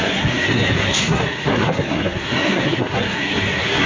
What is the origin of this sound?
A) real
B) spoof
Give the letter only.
B